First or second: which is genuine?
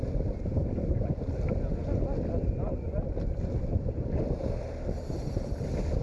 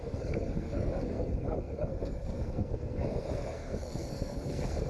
first